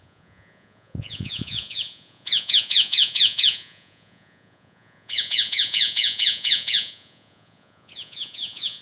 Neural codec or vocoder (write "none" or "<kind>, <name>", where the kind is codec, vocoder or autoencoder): vocoder, Vocos